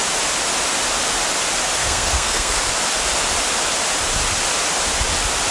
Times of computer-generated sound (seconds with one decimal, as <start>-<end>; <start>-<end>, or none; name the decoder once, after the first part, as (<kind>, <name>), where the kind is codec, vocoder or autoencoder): 1.8-2.6 (codec, SNAC)